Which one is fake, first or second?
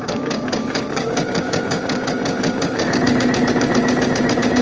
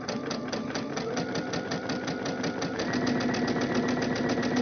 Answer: first